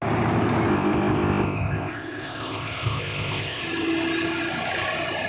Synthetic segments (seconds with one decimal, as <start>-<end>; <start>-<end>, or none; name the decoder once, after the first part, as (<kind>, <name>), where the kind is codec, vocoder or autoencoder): 0.7-3.6 (codec, ZipCodec)

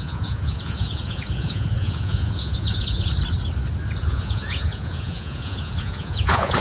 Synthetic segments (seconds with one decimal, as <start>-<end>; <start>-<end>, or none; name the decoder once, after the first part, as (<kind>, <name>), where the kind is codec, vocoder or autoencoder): 0.0-3.1 (vocoder, Vocos); 4.0-6.6

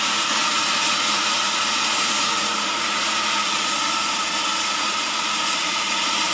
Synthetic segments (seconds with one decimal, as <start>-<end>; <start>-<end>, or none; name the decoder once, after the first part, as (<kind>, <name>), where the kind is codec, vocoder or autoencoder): 0.0-6.3 (vocoder, Vocos)